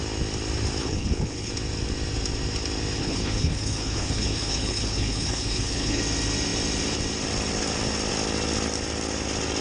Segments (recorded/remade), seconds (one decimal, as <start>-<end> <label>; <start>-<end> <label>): 0.0-0.8 recorded; 0.8-1.5 remade; 1.5-3.0 recorded; 3.0-6.0 remade; 6.0-9.6 recorded